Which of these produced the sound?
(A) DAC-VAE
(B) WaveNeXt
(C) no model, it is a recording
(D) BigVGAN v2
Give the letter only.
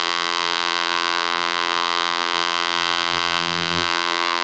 D